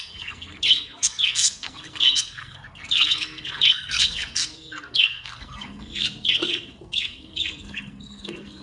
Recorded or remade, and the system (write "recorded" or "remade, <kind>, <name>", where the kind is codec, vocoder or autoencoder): remade, codec, SNAC